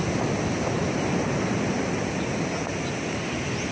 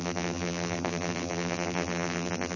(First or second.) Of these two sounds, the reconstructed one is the second